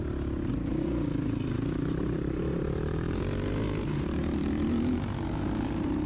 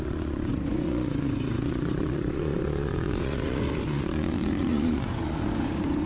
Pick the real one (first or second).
first